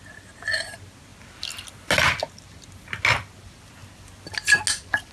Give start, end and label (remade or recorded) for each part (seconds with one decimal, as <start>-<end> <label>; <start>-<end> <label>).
0.0-5.1 recorded